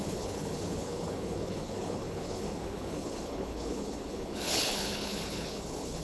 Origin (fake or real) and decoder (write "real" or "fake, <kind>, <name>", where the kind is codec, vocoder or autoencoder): fake, codec, HILCodec